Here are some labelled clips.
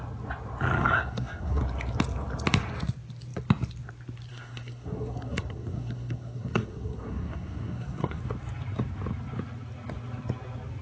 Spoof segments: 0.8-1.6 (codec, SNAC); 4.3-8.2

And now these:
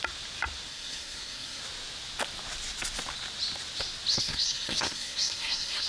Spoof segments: 0.7-1.6 (codec, SNAC); 4.1-5.9

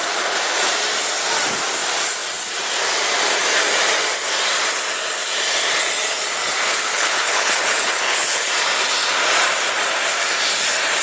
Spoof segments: 6.7-8.5 (codec, HILCodec)

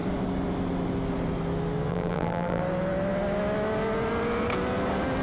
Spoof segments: 1.9-2.6 (vocoder, BigVGAN v2)

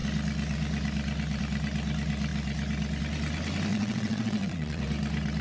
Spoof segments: 3.7-4.8 (vocoder, WaveNeXt)

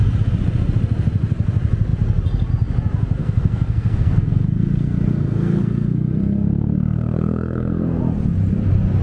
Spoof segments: 3.2-8.0 (codec, SNAC)